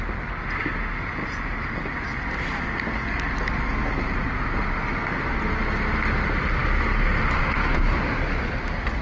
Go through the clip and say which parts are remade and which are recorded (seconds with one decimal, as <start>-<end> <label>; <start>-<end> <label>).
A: 0.0-6.6 recorded; 6.6-7.4 remade; 7.4-9.0 recorded